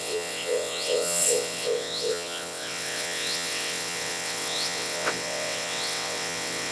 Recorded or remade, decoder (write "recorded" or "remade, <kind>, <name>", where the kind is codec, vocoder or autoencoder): remade, vocoder, WaveNeXt